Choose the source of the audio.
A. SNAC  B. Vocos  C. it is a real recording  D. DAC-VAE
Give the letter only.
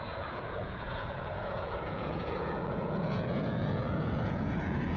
B